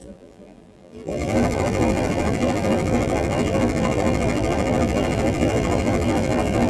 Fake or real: fake